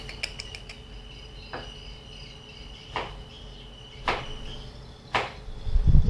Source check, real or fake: real